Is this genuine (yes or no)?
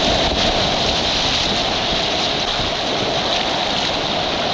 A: yes